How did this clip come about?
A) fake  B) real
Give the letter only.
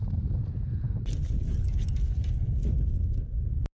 B